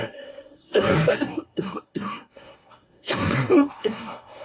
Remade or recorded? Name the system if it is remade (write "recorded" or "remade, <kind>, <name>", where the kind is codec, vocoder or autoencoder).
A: remade, codec, SNAC